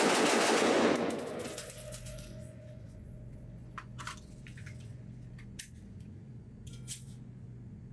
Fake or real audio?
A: fake